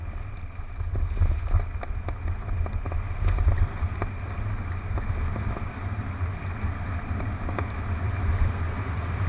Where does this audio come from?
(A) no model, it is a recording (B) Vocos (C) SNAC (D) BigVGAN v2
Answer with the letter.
A